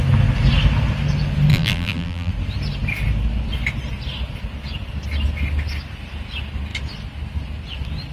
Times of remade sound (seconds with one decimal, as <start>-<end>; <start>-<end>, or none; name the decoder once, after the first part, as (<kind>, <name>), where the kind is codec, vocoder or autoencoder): 1.5-2.3 (vocoder, BigVGAN v2)